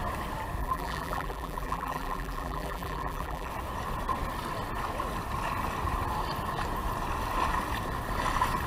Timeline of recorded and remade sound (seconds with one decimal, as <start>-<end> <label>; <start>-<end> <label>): 0.0-0.6 recorded; 0.6-3.5 remade; 3.5-8.7 recorded